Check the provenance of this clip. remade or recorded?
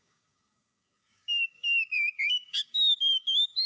remade